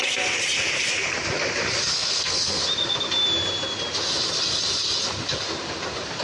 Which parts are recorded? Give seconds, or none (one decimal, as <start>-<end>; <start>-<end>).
0.0-1.9; 2.6-6.2